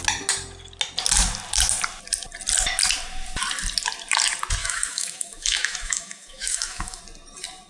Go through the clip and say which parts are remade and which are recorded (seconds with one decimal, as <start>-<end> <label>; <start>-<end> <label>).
0.0-4.6 recorded; 4.6-7.0 remade; 7.0-7.7 recorded